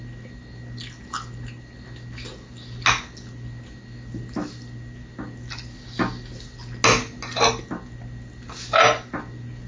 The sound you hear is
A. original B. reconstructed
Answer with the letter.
A